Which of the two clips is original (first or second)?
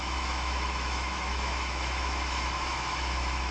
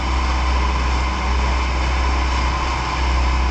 second